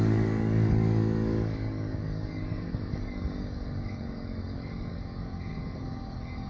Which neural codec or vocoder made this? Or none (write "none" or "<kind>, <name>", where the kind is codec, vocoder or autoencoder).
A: codec, DAC